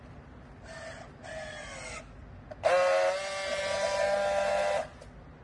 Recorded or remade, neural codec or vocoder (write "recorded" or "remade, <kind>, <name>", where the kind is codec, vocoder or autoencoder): recorded